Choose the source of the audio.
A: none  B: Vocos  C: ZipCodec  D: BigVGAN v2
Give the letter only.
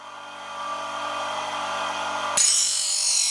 A